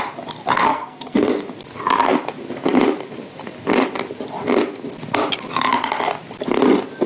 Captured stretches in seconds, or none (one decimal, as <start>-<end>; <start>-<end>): 0.0-0.7; 1.3-7.1